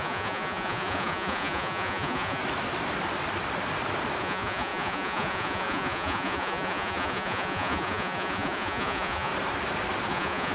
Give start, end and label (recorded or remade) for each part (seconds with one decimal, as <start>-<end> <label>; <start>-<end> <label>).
0.0-2.4 remade; 2.4-4.2 recorded; 4.2-9.3 remade; 9.3-10.1 recorded; 10.1-10.5 remade